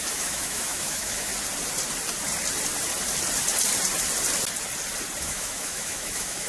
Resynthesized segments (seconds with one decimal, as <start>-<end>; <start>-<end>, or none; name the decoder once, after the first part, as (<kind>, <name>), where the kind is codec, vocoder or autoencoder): 0.0-1.3 (autoencoder, DAC-VAE); 5.2-6.5